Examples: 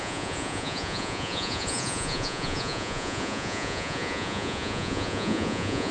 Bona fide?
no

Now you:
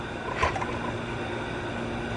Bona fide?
yes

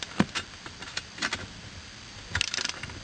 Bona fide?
yes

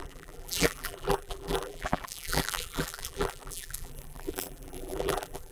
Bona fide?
no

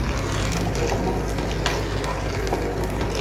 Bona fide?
yes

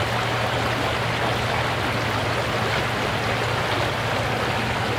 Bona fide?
yes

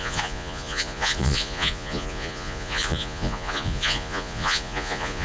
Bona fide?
no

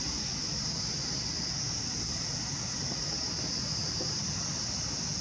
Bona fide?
yes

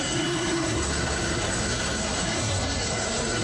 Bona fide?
no